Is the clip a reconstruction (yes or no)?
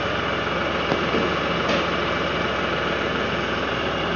no